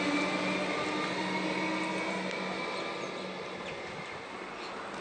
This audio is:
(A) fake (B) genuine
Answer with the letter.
B